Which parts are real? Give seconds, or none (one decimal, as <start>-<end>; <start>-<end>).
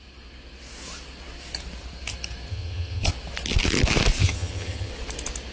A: 0.0-2.5; 3.1-4.2; 4.9-5.5